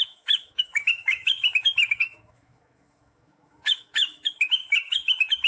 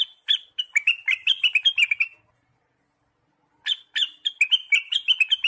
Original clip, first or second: second